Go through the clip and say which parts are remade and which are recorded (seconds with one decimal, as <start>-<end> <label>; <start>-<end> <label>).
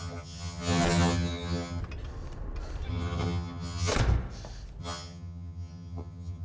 0.0-1.8 remade; 1.8-2.9 recorded; 2.9-3.9 remade; 3.9-4.8 recorded; 4.8-6.4 remade